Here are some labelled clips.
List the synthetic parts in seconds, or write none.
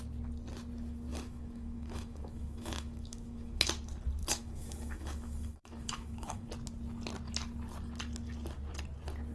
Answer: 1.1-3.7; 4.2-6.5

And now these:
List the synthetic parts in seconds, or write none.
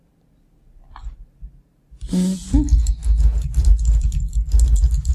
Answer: none